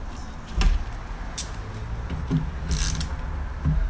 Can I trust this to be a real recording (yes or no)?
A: yes